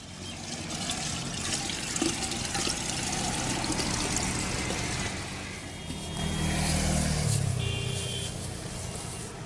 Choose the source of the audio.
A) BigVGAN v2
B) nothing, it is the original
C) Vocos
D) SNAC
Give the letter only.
B